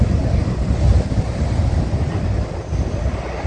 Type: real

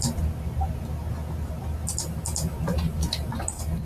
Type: real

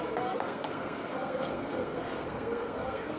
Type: fake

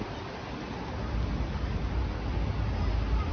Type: real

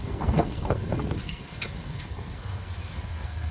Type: fake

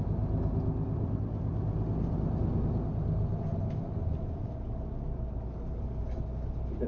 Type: real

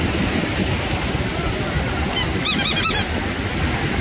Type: real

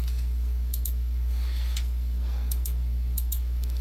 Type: fake